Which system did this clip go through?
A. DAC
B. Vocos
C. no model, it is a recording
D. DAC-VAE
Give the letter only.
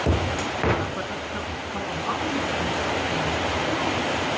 C